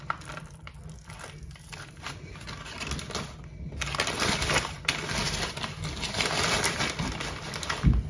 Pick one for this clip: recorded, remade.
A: recorded